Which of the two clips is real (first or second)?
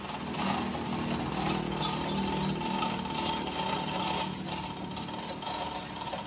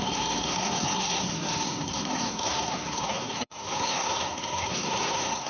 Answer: first